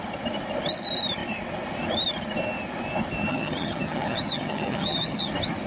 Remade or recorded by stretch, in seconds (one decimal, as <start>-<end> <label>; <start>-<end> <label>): 0.0-3.3 recorded; 3.3-5.3 remade; 5.3-5.7 recorded

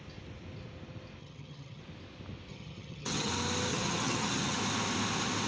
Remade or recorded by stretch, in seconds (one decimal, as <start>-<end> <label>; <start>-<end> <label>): 0.0-1.2 recorded; 1.2-1.8 remade; 1.8-2.5 recorded; 2.5-3.3 remade; 3.3-3.7 recorded; 3.7-4.6 remade; 4.6-5.5 recorded

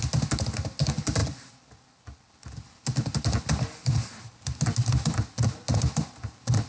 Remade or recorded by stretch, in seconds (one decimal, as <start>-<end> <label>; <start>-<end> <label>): 0.0-6.7 recorded

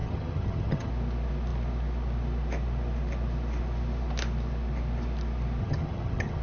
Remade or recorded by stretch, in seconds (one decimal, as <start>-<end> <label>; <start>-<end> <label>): 0.0-0.9 remade; 0.9-5.6 recorded; 5.6-6.4 remade

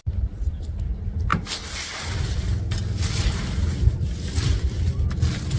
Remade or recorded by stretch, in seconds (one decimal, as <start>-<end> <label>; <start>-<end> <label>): 0.0-5.6 recorded

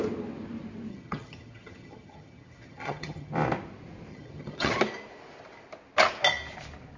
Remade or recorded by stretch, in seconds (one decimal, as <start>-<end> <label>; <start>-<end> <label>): 0.0-0.9 recorded; 0.9-3.3 remade; 3.3-4.1 recorded; 4.1-4.7 remade; 4.7-7.0 recorded